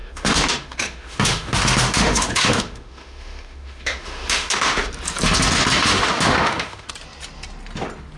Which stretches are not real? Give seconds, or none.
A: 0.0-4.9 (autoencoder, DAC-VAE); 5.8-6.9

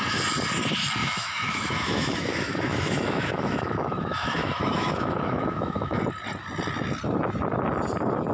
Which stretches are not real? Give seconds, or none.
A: 1.0-6.0 (autoencoder, DAC-VAE)

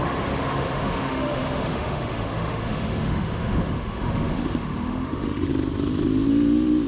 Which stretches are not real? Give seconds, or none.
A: 0.0-5.5 (autoencoder, DAC-VAE)

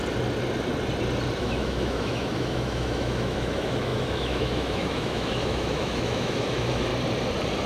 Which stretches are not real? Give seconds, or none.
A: 1.4-6.9 (autoencoder, DAC-VAE)

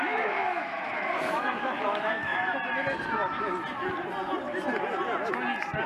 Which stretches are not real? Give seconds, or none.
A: 0.0-2.3 (autoencoder, DAC-VAE)

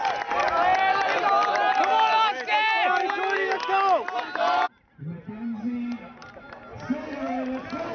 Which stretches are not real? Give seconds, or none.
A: none

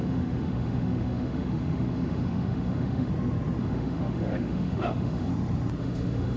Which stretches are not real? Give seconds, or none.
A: 0.0-3.1 (autoencoder, DAC-VAE); 3.6-5.3; 5.8-6.4